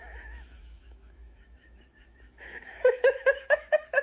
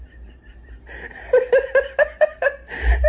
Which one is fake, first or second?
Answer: first